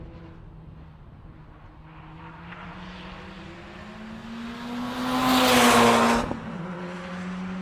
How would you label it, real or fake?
real